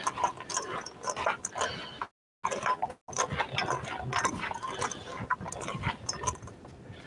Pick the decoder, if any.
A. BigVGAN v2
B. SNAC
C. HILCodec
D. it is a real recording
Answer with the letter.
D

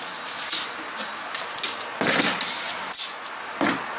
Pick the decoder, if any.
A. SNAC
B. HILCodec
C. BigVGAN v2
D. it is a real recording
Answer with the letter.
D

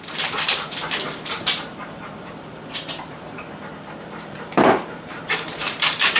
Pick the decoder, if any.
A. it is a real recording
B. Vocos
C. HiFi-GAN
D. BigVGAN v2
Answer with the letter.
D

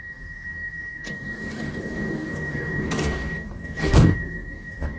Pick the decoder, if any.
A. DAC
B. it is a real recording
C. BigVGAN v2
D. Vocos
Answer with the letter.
A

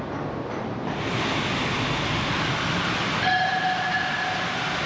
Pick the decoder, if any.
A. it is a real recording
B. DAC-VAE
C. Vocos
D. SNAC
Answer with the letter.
A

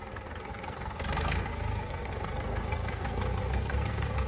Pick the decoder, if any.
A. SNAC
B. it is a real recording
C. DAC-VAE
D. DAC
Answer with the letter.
A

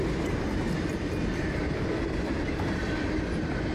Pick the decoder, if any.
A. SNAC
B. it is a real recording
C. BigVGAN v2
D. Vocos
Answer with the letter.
B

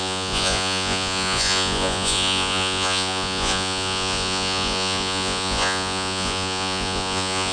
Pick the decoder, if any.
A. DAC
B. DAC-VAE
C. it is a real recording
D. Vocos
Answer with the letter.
D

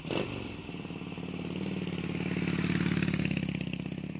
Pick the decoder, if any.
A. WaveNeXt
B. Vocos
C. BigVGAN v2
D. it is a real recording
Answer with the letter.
D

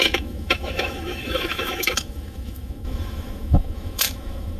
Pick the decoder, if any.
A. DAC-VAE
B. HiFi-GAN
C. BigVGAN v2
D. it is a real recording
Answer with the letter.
A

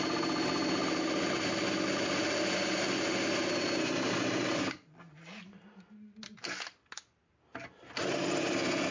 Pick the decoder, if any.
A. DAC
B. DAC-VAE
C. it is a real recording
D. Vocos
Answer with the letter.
C